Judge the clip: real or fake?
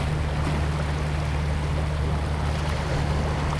real